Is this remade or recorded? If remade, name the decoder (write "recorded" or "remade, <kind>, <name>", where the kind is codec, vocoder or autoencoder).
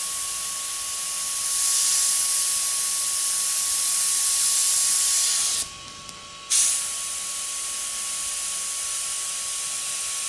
recorded